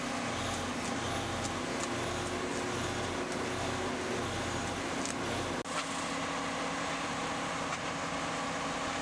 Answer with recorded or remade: recorded